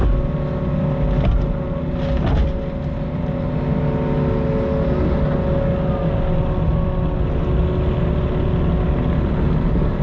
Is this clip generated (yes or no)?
no